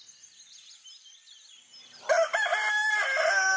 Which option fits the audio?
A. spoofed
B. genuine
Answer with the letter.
B